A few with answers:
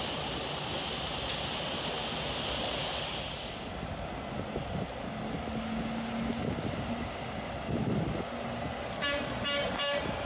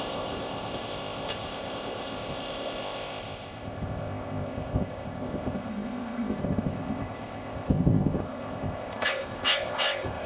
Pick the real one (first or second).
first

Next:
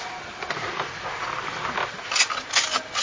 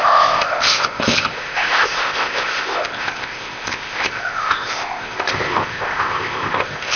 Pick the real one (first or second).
first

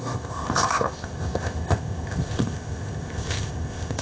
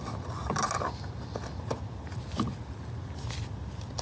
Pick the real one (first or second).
second